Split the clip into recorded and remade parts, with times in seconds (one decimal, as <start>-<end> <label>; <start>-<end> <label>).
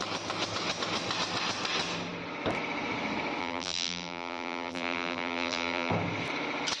0.0-3.4 recorded; 3.4-5.9 remade; 5.9-6.8 recorded